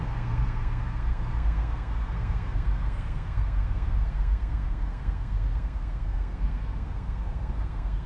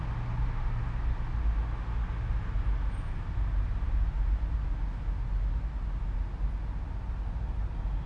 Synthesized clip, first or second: first